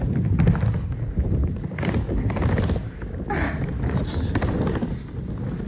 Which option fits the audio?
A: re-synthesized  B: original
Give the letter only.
B